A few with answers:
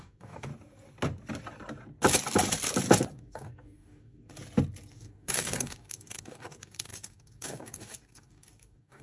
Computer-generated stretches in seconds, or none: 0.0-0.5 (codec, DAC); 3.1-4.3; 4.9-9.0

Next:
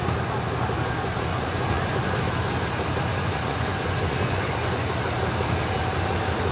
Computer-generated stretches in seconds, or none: 1.3-2.2 (vocoder, Vocos); 3.1-4.9